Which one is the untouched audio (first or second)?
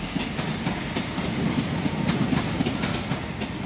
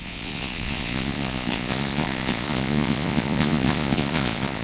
first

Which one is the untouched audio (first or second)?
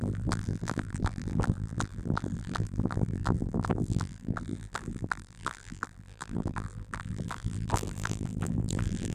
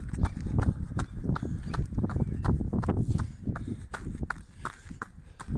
second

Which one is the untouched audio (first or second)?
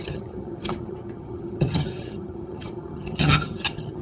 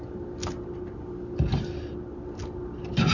second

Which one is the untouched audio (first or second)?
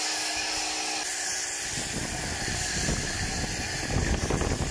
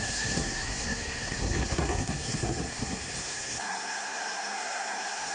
first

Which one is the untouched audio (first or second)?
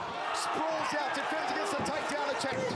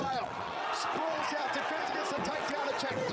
first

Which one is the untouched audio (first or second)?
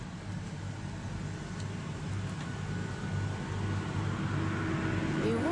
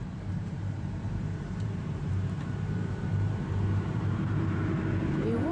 first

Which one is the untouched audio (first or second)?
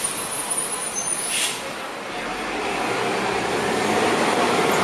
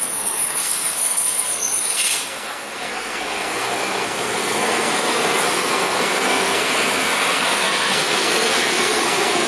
first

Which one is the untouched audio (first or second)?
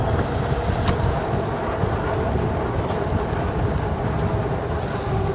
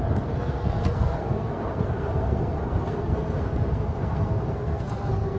first